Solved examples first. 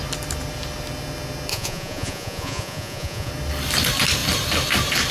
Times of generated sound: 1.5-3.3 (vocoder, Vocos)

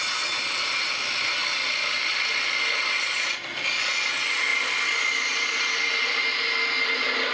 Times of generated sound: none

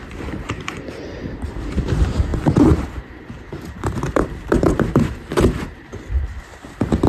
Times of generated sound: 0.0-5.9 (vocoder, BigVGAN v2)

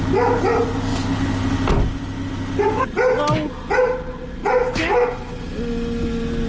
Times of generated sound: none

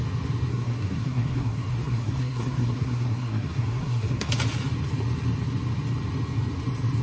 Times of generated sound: 0.5-4.3 (codec, SNAC)

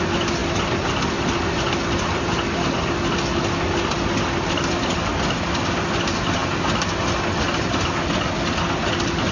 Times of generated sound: none